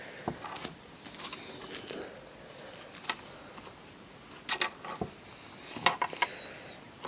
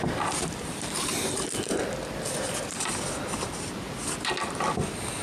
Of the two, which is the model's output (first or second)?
second